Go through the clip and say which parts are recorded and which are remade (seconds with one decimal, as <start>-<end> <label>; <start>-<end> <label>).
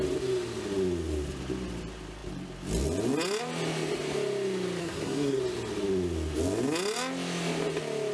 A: 0.0-4.8 recorded; 4.8-5.4 remade; 5.4-8.1 recorded